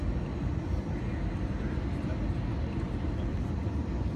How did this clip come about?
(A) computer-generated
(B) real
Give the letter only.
B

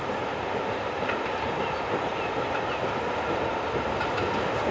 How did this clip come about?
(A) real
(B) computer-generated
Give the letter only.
A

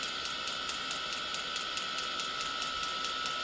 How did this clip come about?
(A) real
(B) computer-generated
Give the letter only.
A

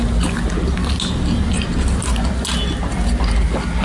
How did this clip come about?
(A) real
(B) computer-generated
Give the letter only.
A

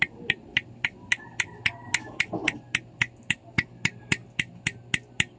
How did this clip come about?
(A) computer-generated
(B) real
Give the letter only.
B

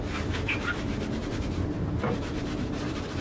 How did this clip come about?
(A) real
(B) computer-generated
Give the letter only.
B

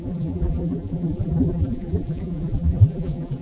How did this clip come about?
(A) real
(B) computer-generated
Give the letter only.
B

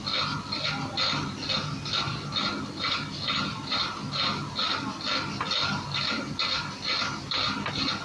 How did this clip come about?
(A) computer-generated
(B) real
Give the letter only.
B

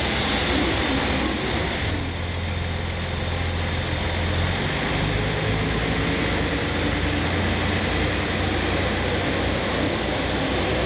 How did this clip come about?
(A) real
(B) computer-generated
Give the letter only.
A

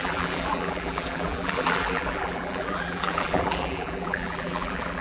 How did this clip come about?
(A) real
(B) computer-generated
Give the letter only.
B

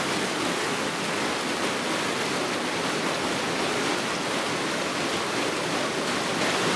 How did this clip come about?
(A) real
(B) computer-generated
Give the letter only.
A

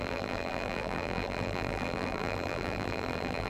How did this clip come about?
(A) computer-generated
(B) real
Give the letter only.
A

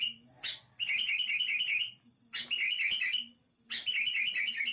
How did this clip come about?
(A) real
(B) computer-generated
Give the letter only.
A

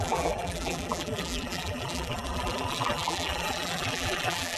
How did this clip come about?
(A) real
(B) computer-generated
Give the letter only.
B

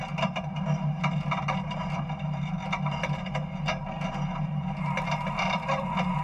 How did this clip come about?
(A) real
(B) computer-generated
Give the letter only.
A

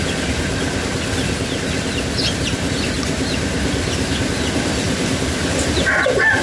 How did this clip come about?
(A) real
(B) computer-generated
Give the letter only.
A